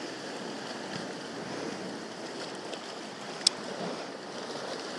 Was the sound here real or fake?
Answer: real